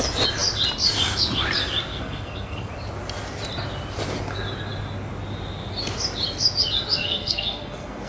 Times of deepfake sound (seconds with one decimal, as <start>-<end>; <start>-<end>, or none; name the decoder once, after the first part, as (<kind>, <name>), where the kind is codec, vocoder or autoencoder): 1.9-2.7 (codec, SNAC); 7.0-8.1